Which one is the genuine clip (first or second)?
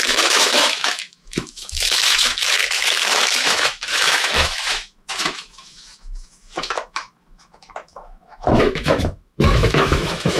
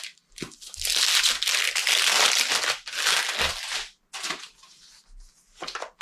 second